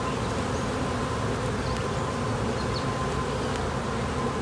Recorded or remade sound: recorded